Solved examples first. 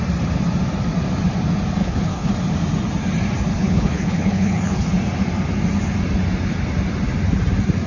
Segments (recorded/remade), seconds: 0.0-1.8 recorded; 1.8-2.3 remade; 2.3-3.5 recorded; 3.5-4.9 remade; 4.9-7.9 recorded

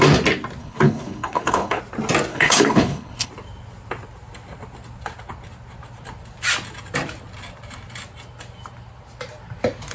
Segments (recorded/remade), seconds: 0.0-0.6 recorded; 0.6-1.8 remade; 1.8-2.3 recorded; 2.3-3.3 remade; 3.3-9.9 recorded